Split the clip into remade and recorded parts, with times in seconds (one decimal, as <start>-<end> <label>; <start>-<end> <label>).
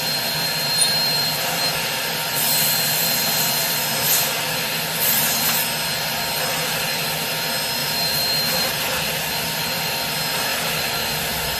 0.0-7.8 recorded; 7.8-9.3 remade; 9.3-11.6 recorded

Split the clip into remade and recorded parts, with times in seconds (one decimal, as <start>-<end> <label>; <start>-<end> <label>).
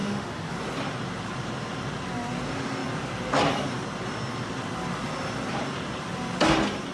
0.0-0.5 remade; 0.5-6.9 recorded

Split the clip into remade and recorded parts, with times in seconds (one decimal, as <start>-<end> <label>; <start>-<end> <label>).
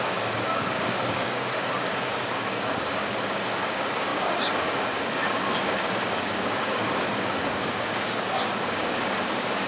0.0-9.7 remade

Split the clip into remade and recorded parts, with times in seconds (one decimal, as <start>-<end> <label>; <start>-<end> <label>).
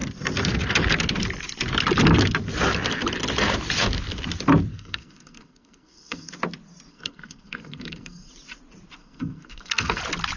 0.0-4.7 recorded; 4.7-6.3 remade; 6.3-6.9 recorded; 6.9-8.3 remade; 8.3-9.0 recorded; 9.0-10.0 remade; 10.0-10.4 recorded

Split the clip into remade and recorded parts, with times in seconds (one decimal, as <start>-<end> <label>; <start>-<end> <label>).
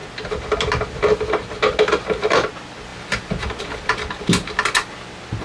0.0-5.4 recorded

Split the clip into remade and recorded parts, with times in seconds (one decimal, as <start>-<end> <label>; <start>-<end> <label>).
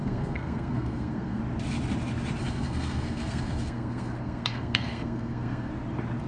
0.0-1.4 remade; 1.4-2.4 recorded; 2.4-5.7 remade; 5.7-6.3 recorded